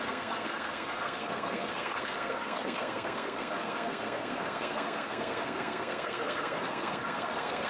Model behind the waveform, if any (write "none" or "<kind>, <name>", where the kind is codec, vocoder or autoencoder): codec, SNAC